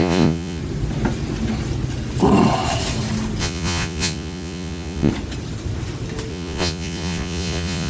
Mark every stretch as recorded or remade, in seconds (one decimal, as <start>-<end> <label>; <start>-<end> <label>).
0.0-0.6 remade; 0.6-3.4 recorded; 3.4-5.1 remade; 5.1-6.3 recorded; 6.3-7.9 remade